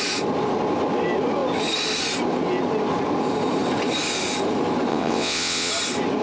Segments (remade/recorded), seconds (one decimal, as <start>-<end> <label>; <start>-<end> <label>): 0.0-4.9 recorded; 4.9-5.7 remade; 5.7-6.2 recorded